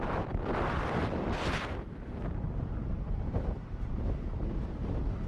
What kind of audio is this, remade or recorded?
remade